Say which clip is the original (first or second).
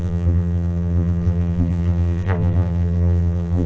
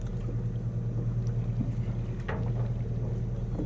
second